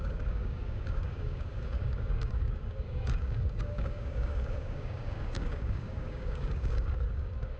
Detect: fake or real fake